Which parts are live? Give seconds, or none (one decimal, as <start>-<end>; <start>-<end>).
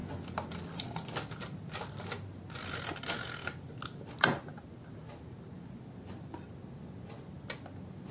0.0-8.1